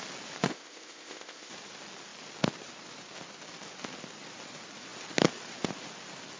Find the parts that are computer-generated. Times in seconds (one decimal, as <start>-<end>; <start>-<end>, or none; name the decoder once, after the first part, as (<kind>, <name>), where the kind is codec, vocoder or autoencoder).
0.5-1.5 (codec, ZipCodec)